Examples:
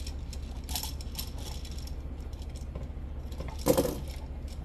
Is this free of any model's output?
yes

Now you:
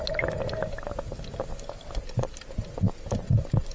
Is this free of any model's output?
yes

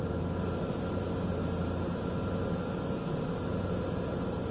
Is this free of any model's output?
yes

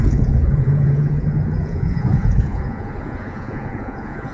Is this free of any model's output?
no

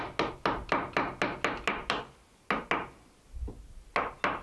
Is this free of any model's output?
yes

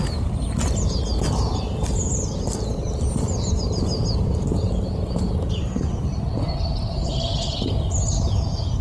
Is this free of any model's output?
yes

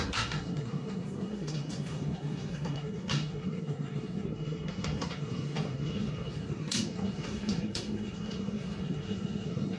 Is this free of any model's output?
no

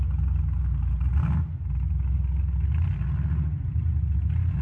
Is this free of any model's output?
yes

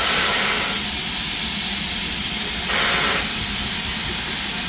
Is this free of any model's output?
yes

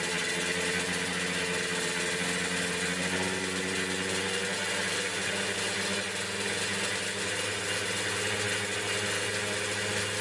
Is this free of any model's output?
yes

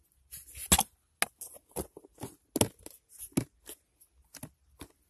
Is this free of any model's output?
yes